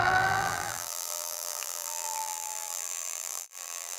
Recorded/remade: remade